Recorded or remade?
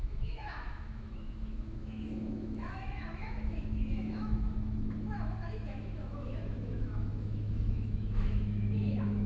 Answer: remade